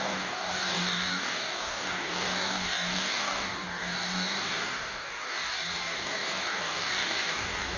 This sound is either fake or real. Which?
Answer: fake